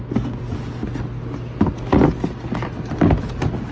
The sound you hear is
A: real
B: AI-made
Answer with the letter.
A